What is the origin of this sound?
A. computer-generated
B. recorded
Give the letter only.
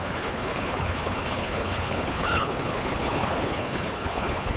A